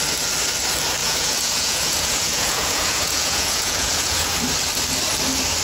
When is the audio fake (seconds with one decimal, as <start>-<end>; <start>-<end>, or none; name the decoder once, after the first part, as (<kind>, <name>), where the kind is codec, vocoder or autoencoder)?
1.0-4.4 (vocoder, Vocos)